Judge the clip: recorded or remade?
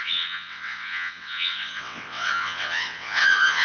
remade